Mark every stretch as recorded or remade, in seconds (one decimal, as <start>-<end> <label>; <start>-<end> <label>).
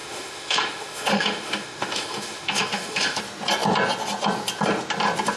0.0-3.2 remade; 3.2-5.4 recorded